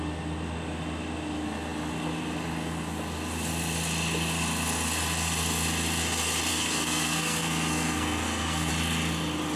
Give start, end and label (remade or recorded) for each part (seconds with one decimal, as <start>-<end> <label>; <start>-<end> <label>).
0.0-6.5 recorded; 6.5-8.7 remade; 8.7-9.6 recorded